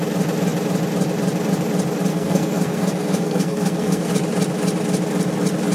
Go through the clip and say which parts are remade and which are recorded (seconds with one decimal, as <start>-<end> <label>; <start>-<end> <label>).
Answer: 0.0-2.1 recorded; 2.1-4.1 remade; 4.1-5.7 recorded